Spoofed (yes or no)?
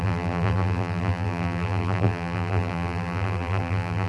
yes